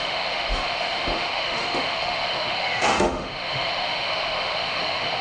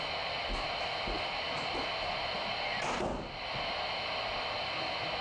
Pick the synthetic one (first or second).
first